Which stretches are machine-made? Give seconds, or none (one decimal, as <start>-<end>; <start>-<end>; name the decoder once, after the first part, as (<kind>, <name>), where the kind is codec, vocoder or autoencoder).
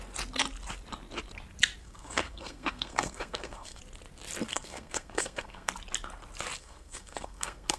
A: 1.8-3.8 (codec, SNAC); 4.5-5.7; 6.6-7.8